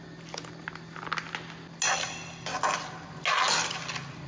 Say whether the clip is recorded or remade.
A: recorded